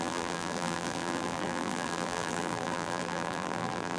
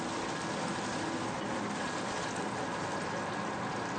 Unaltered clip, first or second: second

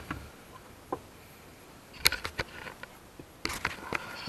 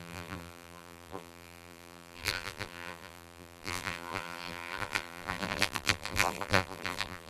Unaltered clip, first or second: first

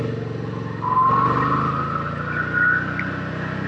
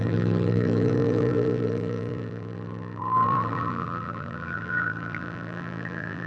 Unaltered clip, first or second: first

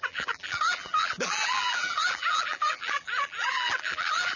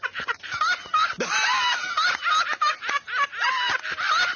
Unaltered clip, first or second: second